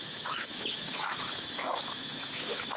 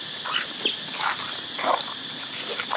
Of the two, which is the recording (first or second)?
second